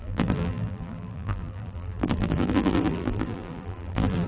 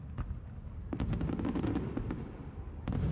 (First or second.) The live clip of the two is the second